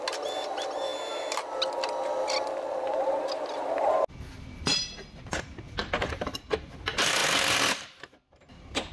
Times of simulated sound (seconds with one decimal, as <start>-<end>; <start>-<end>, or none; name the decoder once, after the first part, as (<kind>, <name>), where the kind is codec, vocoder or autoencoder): none